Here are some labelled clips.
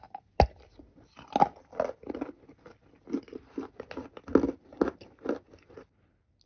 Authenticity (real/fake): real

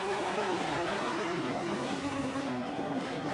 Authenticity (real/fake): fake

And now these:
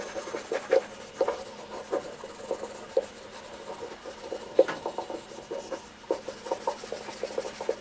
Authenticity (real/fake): real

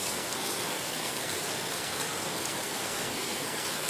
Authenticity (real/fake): fake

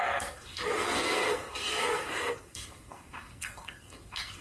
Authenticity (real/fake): fake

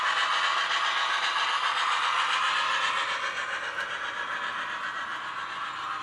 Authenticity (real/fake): real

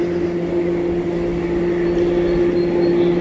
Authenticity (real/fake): real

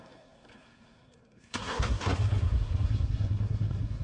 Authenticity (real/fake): fake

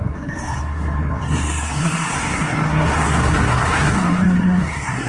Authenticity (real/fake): fake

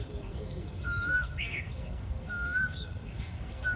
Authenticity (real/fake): fake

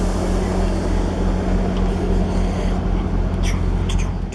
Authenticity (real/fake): real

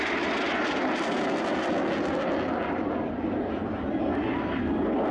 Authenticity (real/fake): real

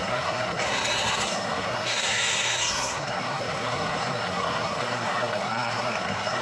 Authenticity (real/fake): fake